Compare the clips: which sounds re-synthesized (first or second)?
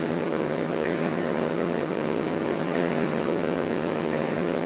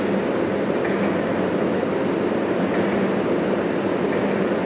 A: first